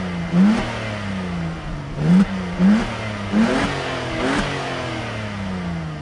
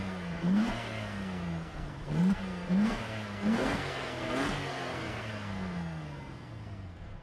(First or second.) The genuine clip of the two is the first